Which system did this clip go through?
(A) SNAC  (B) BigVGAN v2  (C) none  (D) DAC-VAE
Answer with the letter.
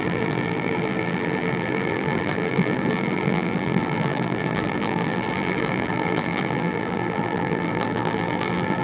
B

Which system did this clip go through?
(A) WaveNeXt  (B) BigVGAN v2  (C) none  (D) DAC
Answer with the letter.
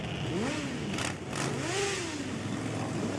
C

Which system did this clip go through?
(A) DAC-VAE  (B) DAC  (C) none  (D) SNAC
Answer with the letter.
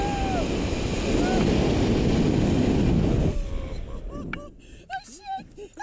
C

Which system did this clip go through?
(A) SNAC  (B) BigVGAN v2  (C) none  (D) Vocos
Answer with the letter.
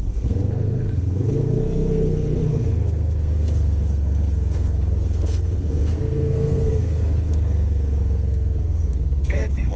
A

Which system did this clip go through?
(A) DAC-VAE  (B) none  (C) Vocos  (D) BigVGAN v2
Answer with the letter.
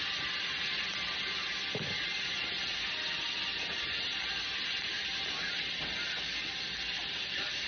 B